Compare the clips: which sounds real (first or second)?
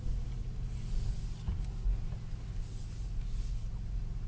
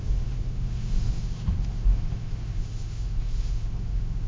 first